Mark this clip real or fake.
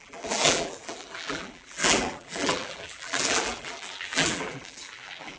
fake